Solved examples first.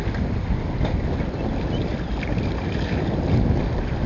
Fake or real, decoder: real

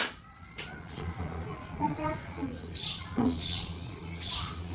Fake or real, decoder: fake, vocoder, Vocos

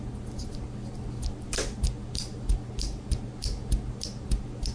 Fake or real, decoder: real